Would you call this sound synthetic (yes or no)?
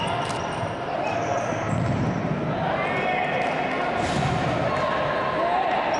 no